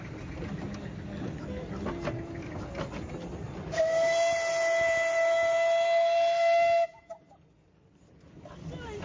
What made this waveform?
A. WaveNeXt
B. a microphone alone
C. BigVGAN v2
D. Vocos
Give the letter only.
B